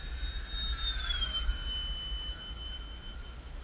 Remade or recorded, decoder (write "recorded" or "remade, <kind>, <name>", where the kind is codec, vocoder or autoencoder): recorded